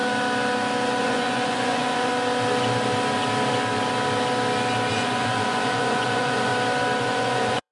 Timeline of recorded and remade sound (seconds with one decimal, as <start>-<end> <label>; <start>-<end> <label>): 0.0-1.0 recorded; 1.0-2.1 remade; 2.1-4.9 recorded; 4.9-6.5 remade; 6.5-7.0 recorded; 7.0-7.7 remade